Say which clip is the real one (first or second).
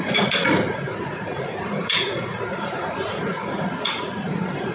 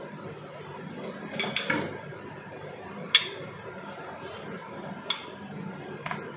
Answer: second